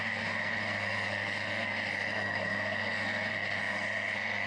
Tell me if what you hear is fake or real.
fake